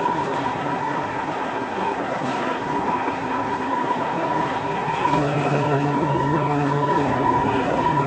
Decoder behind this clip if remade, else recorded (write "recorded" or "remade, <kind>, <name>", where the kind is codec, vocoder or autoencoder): remade, codec, SNAC